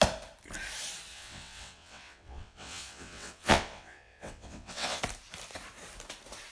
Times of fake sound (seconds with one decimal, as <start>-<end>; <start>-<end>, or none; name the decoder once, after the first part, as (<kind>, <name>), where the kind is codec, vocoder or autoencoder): 1.1-5.0 (vocoder, WaveNeXt)